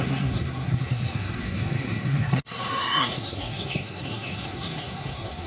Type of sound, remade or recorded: remade